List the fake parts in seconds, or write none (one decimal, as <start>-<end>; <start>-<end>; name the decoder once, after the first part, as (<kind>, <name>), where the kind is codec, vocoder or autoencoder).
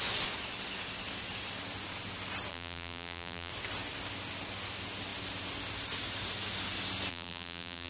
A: 2.5-3.5 (vocoder, BigVGAN v2); 7.1-7.9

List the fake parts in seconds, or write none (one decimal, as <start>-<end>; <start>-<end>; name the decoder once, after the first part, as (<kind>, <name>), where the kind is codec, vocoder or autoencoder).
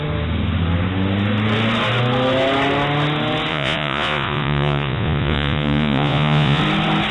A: 3.5-6.6 (vocoder, Vocos)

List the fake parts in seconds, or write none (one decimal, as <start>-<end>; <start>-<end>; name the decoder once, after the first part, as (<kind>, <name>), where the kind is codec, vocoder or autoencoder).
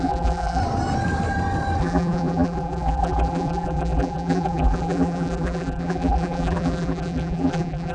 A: 0.0-0.6 (vocoder, BigVGAN v2); 1.8-7.9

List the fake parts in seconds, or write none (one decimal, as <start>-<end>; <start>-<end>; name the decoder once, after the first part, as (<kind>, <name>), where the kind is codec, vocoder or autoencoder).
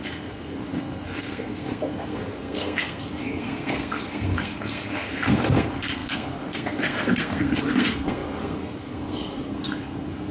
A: 0.0-10.3 (codec, SNAC)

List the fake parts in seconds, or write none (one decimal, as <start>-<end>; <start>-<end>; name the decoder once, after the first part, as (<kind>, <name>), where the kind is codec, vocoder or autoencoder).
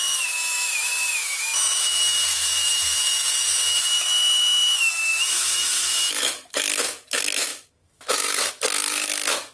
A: 0.0-9.5 (autoencoder, DAC-VAE)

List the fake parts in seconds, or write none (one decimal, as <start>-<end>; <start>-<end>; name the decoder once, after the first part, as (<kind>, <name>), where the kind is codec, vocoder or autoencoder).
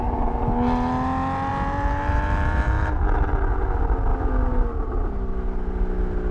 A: 1.5-2.9 (vocoder, BigVGAN v2)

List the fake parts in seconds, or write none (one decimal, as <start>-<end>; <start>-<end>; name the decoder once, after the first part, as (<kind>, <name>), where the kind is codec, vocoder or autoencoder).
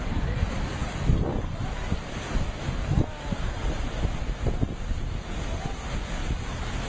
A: none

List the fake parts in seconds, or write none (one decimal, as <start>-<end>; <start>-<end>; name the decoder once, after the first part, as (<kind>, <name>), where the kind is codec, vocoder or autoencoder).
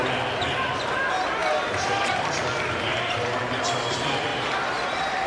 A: 1.4-2.3 (vocoder, BigVGAN v2); 2.9-3.6; 4.3-5.3